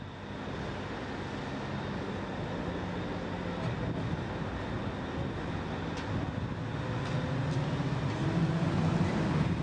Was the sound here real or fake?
real